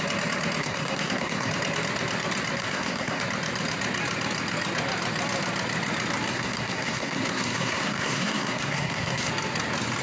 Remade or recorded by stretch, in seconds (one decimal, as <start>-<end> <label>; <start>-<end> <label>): 0.0-0.6 recorded; 0.6-1.5 remade; 1.5-2.6 recorded; 2.6-3.2 remade; 3.2-6.3 recorded; 6.3-9.3 remade; 9.3-10.0 recorded

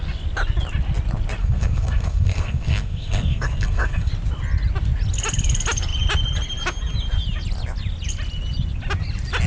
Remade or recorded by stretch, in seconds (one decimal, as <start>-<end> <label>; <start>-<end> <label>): 0.0-1.4 recorded; 1.4-4.1 remade; 4.1-9.5 recorded

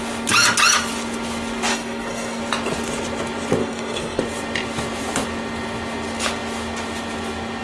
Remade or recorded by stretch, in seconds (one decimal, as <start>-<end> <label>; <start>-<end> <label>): 0.0-1.7 recorded; 1.7-2.4 remade; 2.4-3.6 recorded; 3.6-4.2 remade; 4.2-7.6 recorded